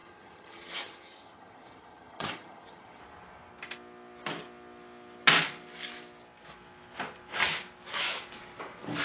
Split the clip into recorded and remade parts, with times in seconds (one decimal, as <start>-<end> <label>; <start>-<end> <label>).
0.0-3.0 remade; 3.0-9.0 recorded